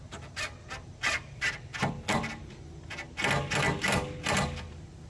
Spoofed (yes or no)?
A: no